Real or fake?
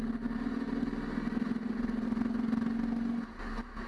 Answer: real